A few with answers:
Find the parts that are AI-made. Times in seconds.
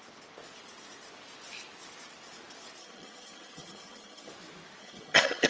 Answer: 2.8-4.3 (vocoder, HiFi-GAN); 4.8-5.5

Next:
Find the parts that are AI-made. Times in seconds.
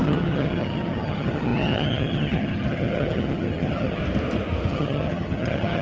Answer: 0.0-4.0 (vocoder, HiFi-GAN); 4.7-5.8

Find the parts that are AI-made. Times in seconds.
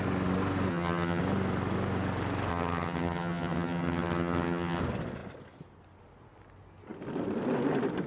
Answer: 0.7-1.2 (vocoder, HiFi-GAN); 2.5-4.8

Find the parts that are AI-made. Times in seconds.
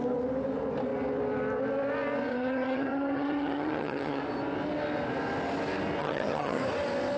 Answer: 2.3-4.2 (vocoder, HiFi-GAN); 6.0-6.6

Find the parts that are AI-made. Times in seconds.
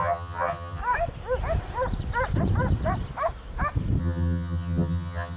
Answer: 0.0-0.8 (vocoder, HiFi-GAN); 4.0-5.4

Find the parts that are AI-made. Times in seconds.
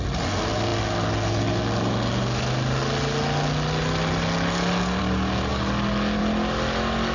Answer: none